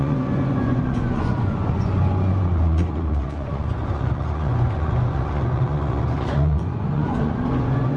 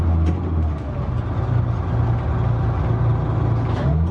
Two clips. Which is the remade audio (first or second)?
first